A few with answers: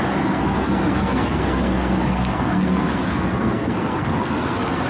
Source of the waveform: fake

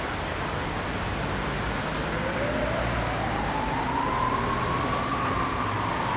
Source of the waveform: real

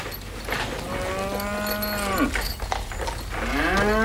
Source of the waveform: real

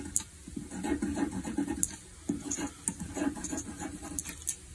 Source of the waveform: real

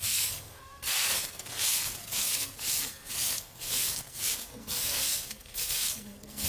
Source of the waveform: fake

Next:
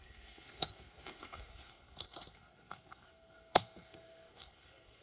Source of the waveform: fake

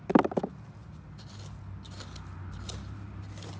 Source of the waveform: real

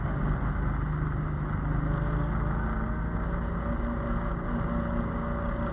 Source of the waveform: real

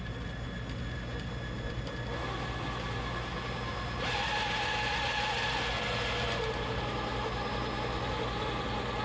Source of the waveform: real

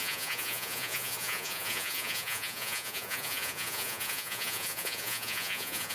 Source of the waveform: fake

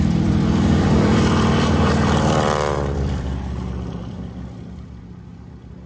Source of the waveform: fake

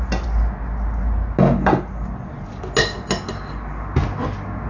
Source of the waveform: real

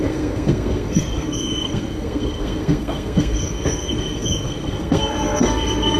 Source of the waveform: fake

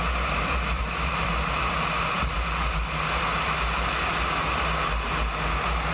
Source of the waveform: real